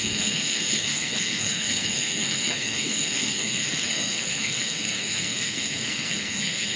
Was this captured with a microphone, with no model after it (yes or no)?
no